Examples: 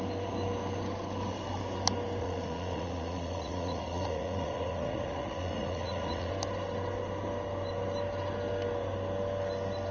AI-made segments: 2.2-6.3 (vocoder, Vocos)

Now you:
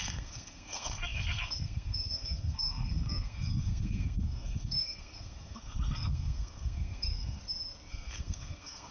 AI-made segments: 0.0-7.4 (codec, SNAC); 7.9-8.9

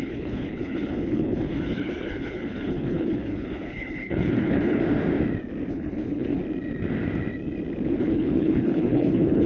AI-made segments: 0.0-4.8 (codec, HILCodec); 5.7-6.4; 8.0-9.5

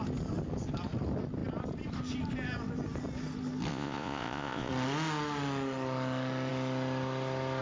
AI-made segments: 3.7-4.7 (vocoder, Vocos)

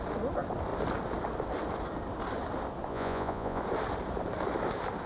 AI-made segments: 2.9-3.6 (vocoder, Vocos)

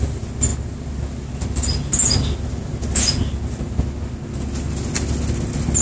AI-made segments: none

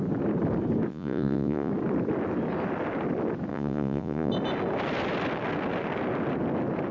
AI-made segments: 0.9-1.7 (vocoder, Vocos); 3.5-4.3

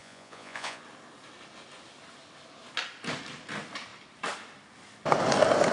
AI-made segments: 0.0-0.8 (vocoder, Vocos)